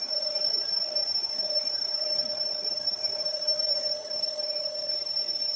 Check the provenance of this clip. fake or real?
fake